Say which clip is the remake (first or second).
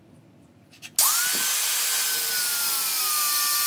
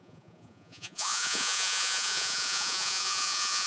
second